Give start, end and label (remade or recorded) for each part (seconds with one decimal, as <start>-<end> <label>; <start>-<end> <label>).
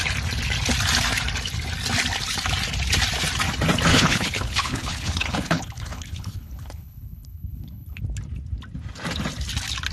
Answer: 0.0-3.9 recorded; 3.9-8.0 remade; 8.0-9.9 recorded